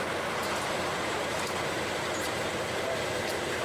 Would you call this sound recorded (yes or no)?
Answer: no